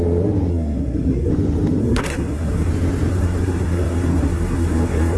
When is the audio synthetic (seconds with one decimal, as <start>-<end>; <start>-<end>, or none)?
0.5-1.3; 1.8-2.7; 3.1-5.2